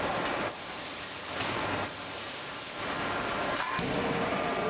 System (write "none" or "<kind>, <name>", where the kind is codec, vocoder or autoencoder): vocoder, BigVGAN v2